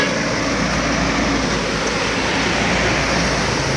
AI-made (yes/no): no